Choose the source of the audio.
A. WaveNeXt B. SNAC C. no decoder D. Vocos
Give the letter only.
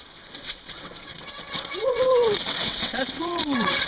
A